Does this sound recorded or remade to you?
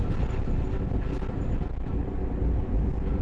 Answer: recorded